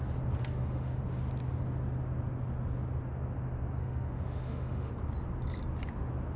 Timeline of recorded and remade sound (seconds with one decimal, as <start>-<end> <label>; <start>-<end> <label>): 0.0-0.4 recorded; 0.4-1.0 remade; 1.0-3.8 recorded; 3.8-4.9 remade; 4.9-6.4 recorded